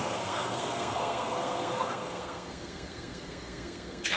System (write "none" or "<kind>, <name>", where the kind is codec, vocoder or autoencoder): codec, SNAC